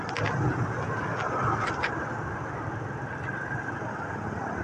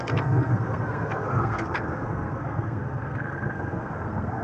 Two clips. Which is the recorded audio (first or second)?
first